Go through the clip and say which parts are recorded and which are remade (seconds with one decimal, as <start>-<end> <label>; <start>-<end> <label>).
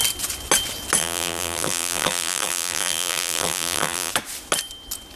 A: 0.0-1.0 recorded; 1.0-4.1 remade; 4.1-5.2 recorded